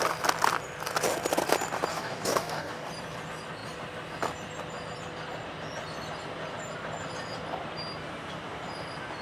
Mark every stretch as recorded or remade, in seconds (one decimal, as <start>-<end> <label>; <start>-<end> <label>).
0.0-1.9 recorded; 1.9-2.9 remade; 2.9-9.2 recorded